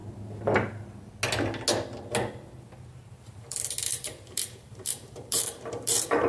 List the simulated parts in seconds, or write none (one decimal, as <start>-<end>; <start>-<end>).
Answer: 2.9-6.3